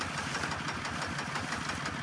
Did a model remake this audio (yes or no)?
no